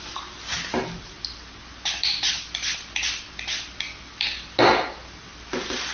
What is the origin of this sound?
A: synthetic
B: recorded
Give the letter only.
B